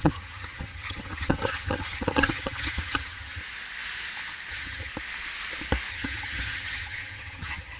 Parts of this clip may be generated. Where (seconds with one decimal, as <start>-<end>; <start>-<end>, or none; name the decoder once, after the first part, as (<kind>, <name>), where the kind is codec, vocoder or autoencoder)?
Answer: 0.0-3.4 (vocoder, HiFi-GAN); 4.5-4.9; 5.9-7.8